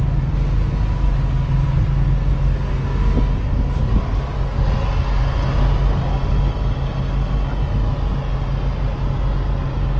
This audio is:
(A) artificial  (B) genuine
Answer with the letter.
B